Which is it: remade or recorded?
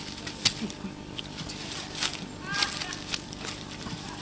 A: recorded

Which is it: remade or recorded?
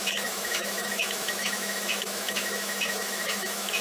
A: remade